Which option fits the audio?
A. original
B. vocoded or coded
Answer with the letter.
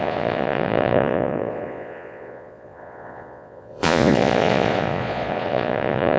B